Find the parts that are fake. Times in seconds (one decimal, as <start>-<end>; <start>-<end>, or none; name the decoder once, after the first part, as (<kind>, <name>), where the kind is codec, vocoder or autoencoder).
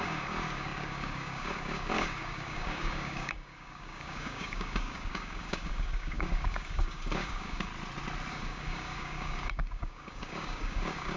0.0-7.7 (codec, DAC); 8.3-11.2